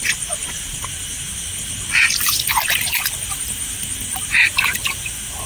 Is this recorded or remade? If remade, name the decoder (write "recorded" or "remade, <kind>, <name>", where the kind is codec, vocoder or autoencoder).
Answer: recorded